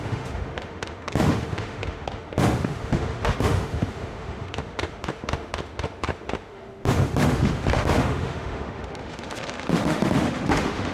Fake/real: fake